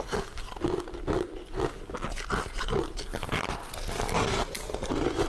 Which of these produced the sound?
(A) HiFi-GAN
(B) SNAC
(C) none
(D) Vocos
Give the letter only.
C